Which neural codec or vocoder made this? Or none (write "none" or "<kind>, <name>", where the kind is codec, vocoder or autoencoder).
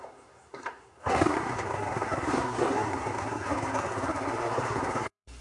codec, SNAC